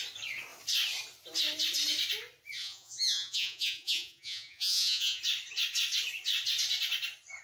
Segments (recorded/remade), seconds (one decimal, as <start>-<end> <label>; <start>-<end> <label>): 0.0-2.6 recorded; 2.6-5.2 remade; 5.2-7.4 recorded